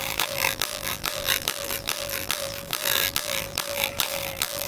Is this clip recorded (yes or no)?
no